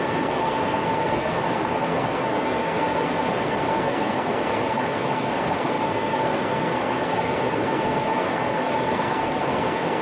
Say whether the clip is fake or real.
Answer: fake